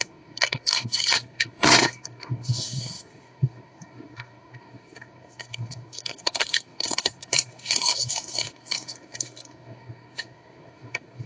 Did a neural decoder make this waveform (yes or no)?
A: yes